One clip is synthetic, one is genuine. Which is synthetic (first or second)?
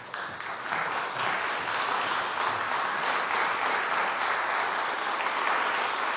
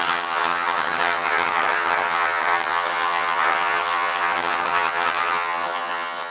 second